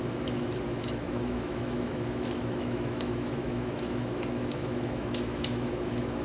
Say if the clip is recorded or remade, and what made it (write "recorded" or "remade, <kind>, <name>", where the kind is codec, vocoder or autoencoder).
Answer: remade, autoencoder, DAC-VAE